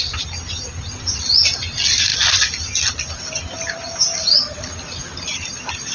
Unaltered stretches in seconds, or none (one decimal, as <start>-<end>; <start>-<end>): 0.0-5.0